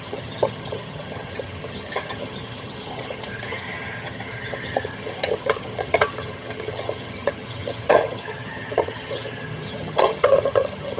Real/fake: fake